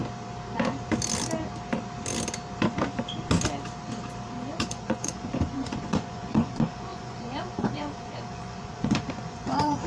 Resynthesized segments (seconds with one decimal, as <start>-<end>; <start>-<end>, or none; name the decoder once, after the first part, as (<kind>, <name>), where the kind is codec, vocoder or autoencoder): 4.7-9.9 (vocoder, Vocos)